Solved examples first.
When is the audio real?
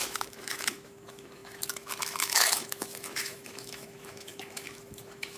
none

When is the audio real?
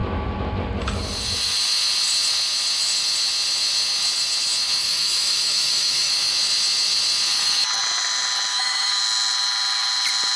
0.0-4.8; 6.1-8.5; 9.0-10.4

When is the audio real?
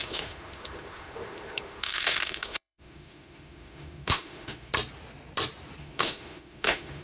4.7-5.8